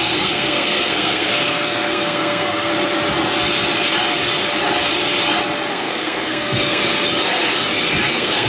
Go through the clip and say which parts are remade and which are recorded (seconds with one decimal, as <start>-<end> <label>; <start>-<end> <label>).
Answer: 0.0-2.7 remade; 2.7-5.7 recorded; 5.7-6.8 remade; 6.8-8.1 recorded; 8.1-8.5 remade

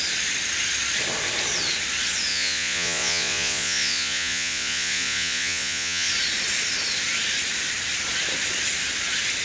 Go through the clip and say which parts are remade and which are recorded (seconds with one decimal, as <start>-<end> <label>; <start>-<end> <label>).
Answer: 0.0-2.3 recorded; 2.3-6.1 remade; 6.1-9.4 recorded

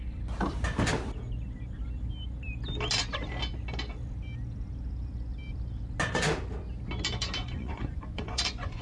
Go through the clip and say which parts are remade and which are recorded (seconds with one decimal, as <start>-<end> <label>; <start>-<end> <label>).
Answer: 0.0-7.4 recorded; 7.4-8.8 remade

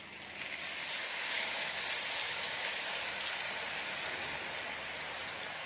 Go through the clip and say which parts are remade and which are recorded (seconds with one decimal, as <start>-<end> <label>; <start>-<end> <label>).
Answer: 0.0-1.0 recorded; 1.0-1.8 remade; 1.8-2.2 recorded; 2.2-2.9 remade; 2.9-5.7 recorded

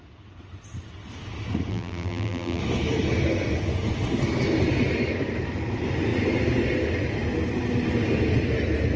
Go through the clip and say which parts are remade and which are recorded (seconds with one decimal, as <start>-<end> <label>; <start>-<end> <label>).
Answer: 0.0-1.7 recorded; 1.7-2.6 remade; 2.6-9.0 recorded

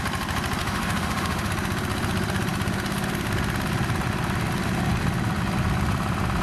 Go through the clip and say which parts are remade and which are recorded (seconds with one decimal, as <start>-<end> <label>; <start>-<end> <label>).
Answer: 0.0-0.6 recorded; 0.6-1.5 remade; 1.5-6.4 recorded

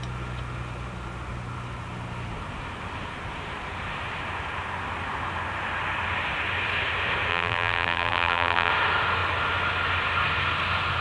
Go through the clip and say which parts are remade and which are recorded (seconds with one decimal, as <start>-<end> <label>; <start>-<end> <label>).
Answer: 0.0-7.3 recorded; 7.3-8.7 remade; 8.7-11.0 recorded